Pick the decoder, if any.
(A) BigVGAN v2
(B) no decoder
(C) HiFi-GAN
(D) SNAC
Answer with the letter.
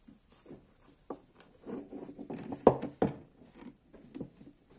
B